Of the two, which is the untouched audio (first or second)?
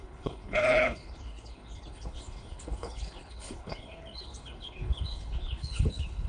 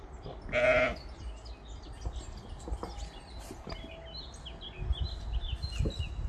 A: second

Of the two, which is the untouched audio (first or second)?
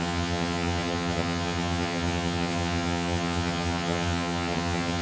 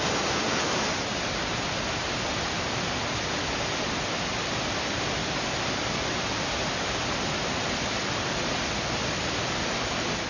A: second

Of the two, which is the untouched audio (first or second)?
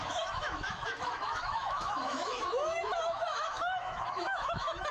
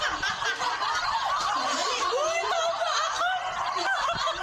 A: second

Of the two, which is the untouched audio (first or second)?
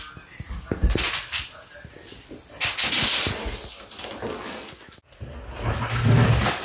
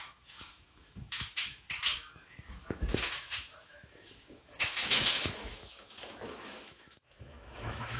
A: first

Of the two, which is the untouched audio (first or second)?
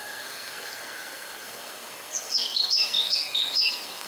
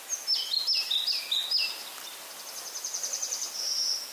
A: second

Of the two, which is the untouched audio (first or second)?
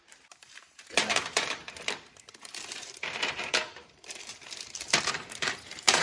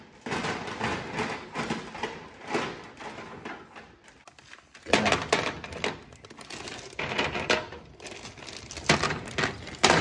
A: second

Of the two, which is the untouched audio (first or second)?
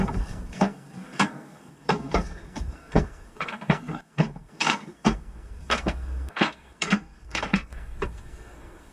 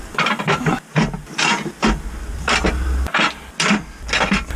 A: second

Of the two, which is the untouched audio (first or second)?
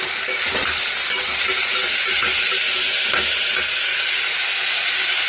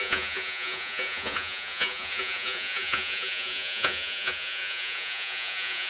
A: first